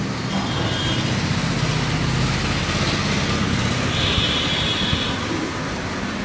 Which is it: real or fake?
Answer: real